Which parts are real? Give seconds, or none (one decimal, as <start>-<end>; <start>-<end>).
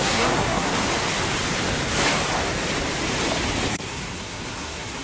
0.7-3.7